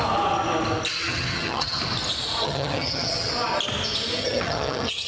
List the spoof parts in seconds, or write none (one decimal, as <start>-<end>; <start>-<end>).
1.0-1.8; 2.4-3.3; 4.2-5.1

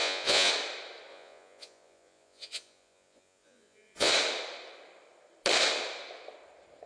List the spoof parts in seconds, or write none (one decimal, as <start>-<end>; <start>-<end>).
0.0-0.5; 1.1-4.1

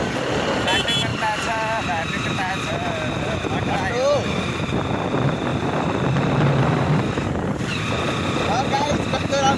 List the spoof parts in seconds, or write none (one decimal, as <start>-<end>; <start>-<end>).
1.1-2.7; 5.5-7.6